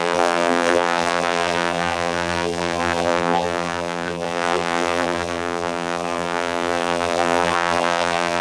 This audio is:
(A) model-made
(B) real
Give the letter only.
A